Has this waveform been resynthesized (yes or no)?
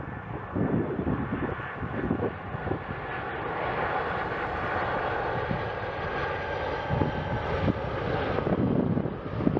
no